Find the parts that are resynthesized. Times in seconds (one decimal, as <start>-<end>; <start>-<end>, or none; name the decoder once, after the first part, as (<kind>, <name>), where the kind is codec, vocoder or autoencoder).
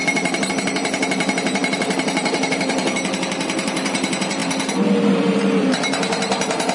0.0-4.4 (vocoder, BigVGAN v2); 5.1-6.7